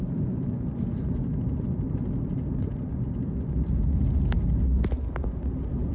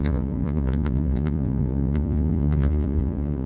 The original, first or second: first